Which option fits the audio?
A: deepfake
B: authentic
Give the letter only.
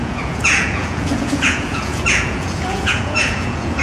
A